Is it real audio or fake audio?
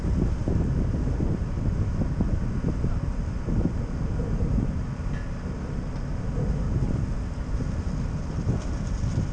real